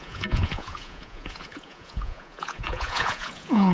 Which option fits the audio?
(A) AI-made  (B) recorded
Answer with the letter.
A